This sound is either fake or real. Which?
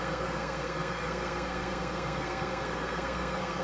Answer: fake